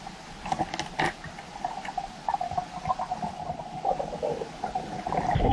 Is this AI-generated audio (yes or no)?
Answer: no